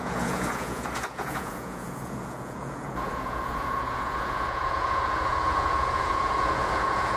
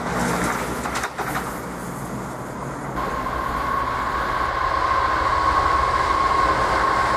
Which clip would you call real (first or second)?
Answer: second